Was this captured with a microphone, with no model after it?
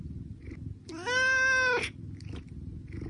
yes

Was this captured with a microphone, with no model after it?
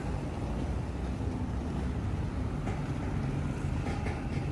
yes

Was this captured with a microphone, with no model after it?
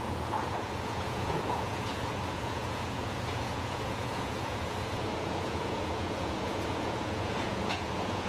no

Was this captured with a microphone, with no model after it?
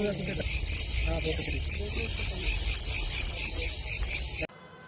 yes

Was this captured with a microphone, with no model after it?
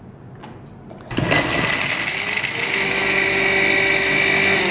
yes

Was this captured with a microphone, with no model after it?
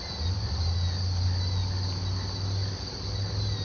yes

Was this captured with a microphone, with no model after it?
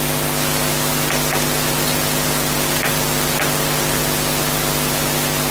yes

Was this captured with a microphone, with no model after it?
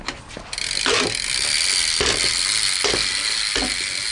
yes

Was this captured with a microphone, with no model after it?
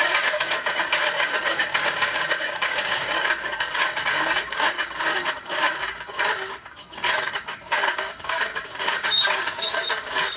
no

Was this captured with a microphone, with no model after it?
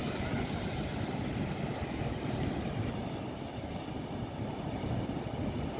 no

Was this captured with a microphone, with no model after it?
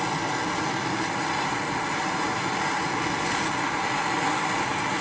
yes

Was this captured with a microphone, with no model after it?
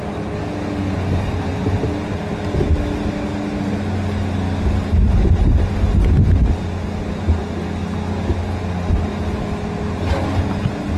yes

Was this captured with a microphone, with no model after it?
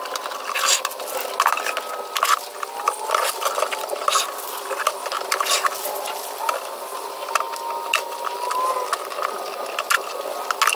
yes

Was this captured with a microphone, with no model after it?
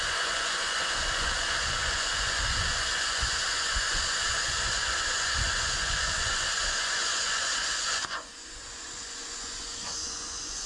no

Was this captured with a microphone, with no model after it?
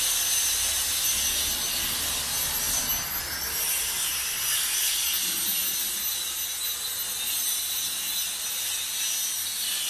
yes